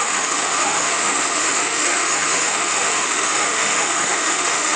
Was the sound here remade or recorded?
remade